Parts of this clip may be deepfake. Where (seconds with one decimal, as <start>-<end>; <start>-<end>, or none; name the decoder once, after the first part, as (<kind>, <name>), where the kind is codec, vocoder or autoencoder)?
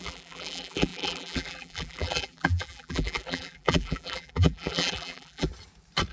0.0-5.5 (vocoder, BigVGAN v2)